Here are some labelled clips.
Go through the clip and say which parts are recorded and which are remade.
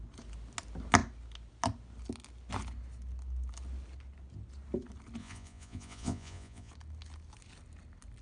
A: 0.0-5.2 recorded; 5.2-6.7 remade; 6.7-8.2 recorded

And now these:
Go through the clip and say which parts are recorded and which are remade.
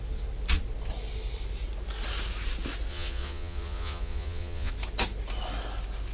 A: 0.0-2.9 recorded; 2.9-4.7 remade; 4.7-6.1 recorded